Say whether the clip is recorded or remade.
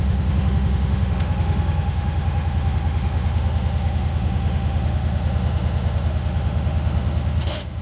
remade